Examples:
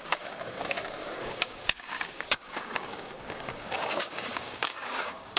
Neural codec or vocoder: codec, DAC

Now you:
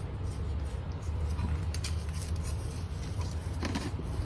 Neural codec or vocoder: none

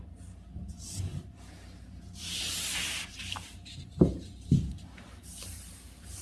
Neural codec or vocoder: vocoder, BigVGAN v2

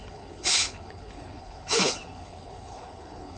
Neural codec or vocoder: codec, HILCodec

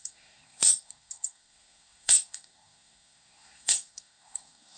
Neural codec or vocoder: codec, SNAC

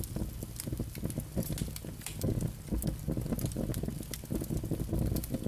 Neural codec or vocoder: none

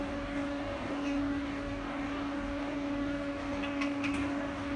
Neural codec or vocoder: codec, DAC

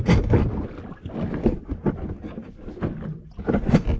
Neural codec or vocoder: none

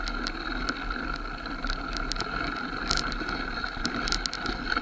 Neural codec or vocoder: none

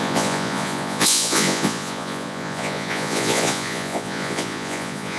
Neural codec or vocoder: vocoder, Vocos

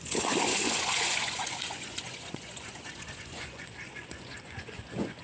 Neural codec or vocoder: vocoder, Vocos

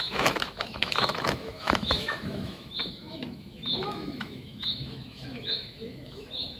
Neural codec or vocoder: autoencoder, DAC-VAE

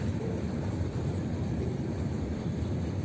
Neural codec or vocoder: vocoder, BigVGAN v2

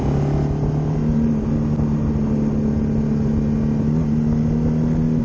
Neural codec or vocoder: none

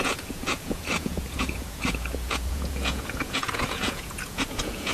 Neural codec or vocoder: vocoder, Vocos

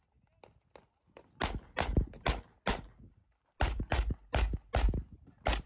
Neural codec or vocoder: none